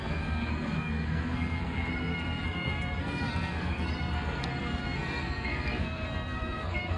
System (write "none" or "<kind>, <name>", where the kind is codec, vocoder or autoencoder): codec, SNAC